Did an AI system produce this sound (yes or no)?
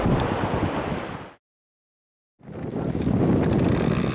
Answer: no